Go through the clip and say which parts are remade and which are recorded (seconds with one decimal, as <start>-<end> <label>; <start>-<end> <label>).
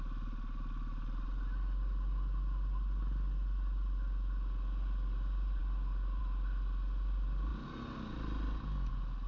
0.0-9.3 recorded